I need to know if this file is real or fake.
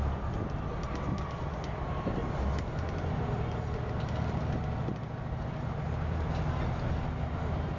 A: real